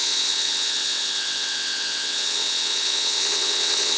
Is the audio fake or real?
fake